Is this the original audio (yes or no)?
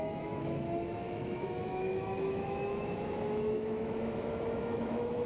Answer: no